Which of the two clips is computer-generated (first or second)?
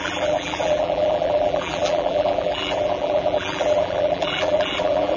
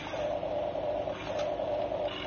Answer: first